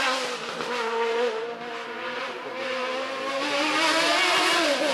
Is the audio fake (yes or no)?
no